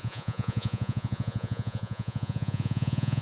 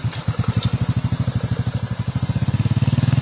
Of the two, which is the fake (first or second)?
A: first